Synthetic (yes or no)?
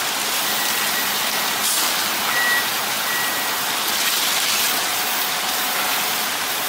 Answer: no